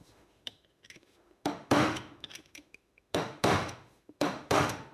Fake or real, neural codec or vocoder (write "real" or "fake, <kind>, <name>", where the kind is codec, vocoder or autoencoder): fake, autoencoder, DAC-VAE